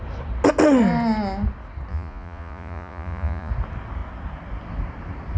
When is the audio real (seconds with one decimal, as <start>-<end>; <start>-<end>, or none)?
0.0-1.9; 3.5-5.4